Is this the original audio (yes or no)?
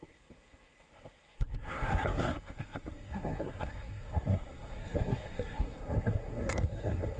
no